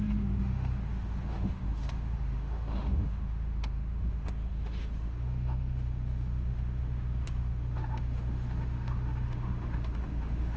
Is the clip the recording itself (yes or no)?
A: no